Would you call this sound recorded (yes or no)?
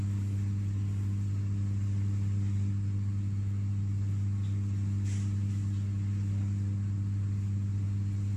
yes